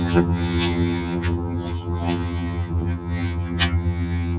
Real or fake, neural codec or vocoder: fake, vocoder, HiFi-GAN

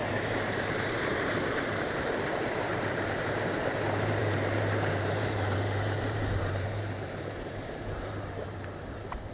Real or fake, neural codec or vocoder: fake, vocoder, BigVGAN v2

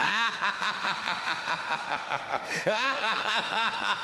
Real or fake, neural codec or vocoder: fake, autoencoder, DAC-VAE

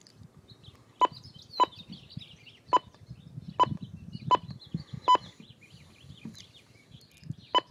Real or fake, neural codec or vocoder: real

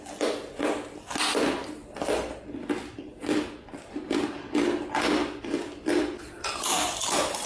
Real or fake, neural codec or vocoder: real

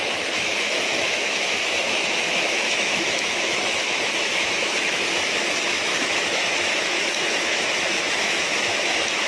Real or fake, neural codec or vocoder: fake, autoencoder, DAC-VAE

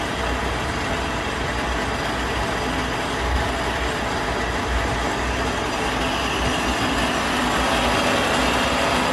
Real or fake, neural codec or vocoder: real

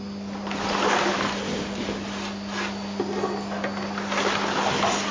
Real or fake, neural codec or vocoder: real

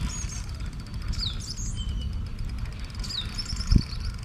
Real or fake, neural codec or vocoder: real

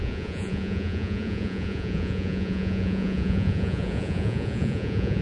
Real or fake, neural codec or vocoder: fake, vocoder, Vocos